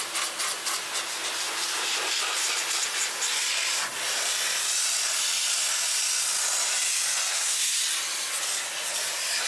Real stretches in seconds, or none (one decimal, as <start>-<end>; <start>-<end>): 0.0-7.3; 7.8-9.5